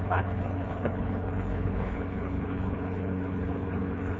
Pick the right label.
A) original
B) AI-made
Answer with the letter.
B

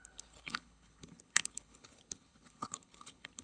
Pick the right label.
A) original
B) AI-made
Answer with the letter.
B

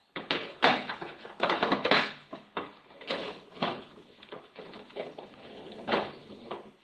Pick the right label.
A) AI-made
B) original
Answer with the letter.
A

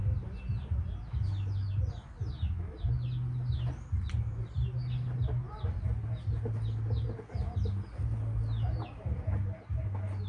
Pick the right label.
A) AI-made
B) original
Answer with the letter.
B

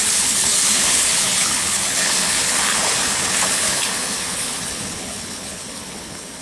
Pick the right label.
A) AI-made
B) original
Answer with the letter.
A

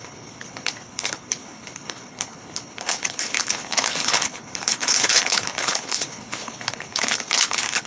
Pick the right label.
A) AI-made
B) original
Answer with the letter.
A